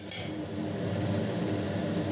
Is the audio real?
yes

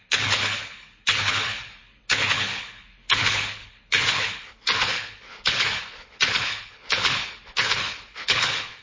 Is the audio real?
no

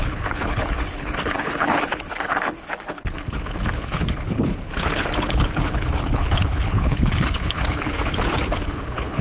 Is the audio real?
no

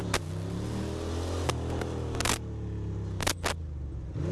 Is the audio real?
yes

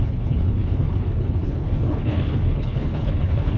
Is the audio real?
no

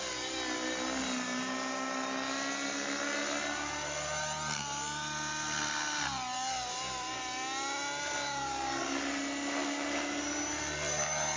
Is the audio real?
yes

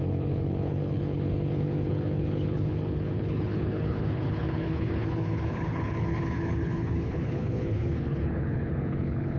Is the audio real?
no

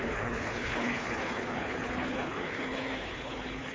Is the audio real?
no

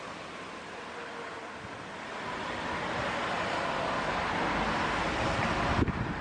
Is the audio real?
yes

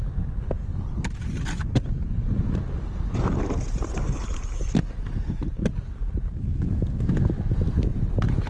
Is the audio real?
yes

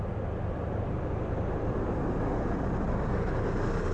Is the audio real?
yes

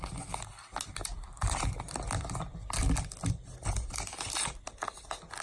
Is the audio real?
yes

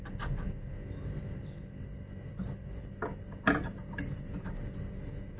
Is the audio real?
yes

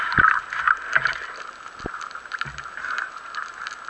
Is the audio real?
yes